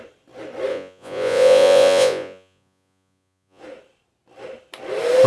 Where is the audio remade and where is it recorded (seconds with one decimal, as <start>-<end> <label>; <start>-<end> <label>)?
0.0-0.7 recorded; 0.7-3.6 remade; 3.6-5.3 recorded

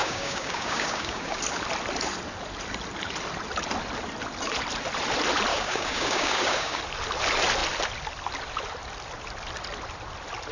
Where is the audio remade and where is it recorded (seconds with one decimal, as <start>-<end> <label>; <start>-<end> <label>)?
0.0-1.4 remade; 1.4-5.5 recorded; 5.5-6.8 remade; 6.8-10.5 recorded

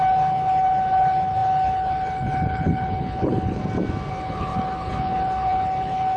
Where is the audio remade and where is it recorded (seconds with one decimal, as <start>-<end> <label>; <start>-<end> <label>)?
0.0-3.6 remade; 3.6-4.1 recorded; 4.1-6.2 remade

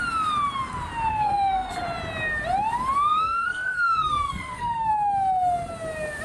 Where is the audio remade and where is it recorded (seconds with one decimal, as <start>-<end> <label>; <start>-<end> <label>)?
0.0-1.1 recorded; 1.1-1.7 remade; 1.7-3.1 recorded; 3.1-4.9 remade; 4.9-6.2 recorded

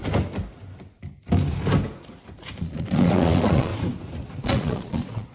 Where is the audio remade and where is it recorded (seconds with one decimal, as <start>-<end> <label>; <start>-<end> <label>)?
0.0-2.6 recorded; 2.6-3.7 remade; 3.7-4.4 recorded; 4.4-5.3 remade

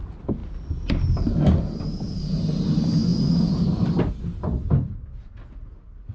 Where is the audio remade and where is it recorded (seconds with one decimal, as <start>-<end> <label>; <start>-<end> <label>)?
0.0-6.1 recorded

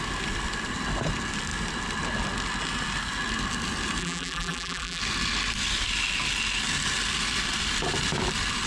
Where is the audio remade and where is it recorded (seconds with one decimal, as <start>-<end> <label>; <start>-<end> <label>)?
0.0-4.0 recorded; 4.0-5.0 remade; 5.0-8.7 recorded